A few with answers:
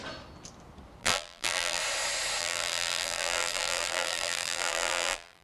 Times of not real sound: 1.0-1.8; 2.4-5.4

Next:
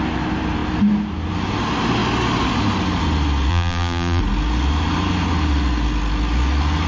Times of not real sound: 3.5-4.2

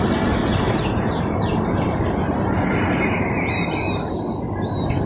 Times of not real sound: 0.4-3.5

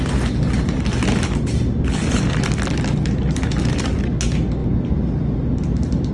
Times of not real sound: none

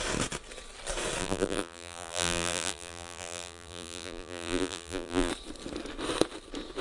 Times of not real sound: 1.2-5.3